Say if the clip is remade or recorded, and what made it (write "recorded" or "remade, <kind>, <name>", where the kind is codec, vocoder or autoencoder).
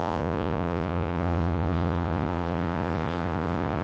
remade, vocoder, Vocos